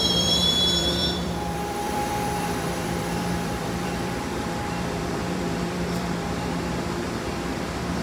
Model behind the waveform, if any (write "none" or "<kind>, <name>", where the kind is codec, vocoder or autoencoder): vocoder, BigVGAN v2